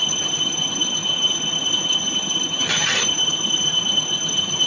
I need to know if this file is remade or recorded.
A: remade